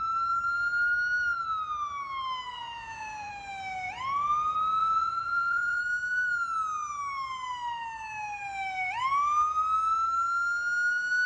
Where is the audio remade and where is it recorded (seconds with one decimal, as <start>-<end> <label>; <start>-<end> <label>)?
0.0-2.5 recorded; 2.5-3.3 remade; 3.3-4.8 recorded; 4.8-5.8 remade; 5.8-11.3 recorded